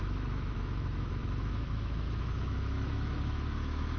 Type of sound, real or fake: fake